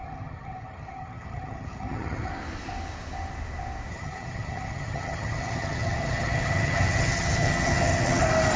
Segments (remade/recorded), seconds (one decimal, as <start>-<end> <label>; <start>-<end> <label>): 0.0-2.3 remade; 2.3-3.9 recorded; 3.9-8.2 remade; 8.2-8.6 recorded